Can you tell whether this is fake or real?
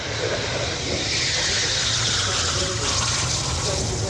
real